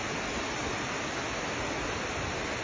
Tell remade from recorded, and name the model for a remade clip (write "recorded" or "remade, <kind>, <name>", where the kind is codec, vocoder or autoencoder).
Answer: recorded